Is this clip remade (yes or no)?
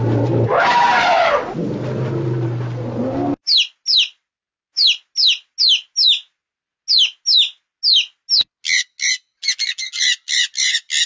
no